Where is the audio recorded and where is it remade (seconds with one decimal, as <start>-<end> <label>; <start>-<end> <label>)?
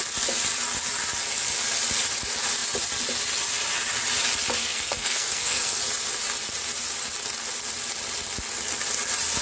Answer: 0.0-4.6 recorded; 4.6-5.8 remade; 5.8-9.4 recorded